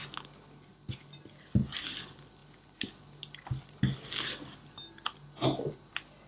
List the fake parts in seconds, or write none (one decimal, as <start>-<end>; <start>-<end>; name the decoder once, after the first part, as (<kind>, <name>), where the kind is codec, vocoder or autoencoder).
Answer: none